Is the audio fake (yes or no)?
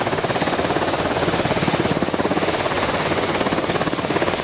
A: yes